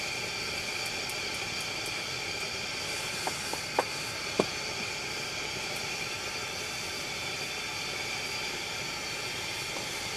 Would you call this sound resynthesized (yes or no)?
no